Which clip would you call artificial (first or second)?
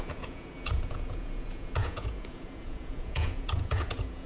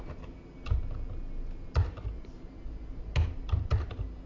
first